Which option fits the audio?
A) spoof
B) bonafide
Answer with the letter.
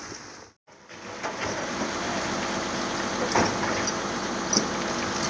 B